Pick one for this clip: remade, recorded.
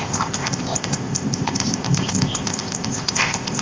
remade